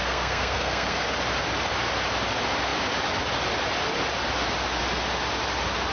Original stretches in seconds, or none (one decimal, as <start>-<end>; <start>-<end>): 1.1-5.9